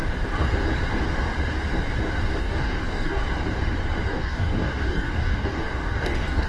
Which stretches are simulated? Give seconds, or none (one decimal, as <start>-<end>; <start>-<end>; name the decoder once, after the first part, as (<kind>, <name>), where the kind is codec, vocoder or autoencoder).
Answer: 2.4-3.2 (codec, DAC); 4.0-6.5